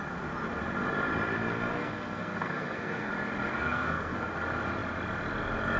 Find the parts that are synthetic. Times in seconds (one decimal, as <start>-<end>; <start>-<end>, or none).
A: 1.8-3.1; 3.5-4.3